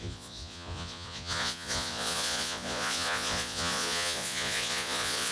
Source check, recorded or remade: remade